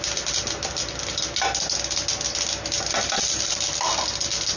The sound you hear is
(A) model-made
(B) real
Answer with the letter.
B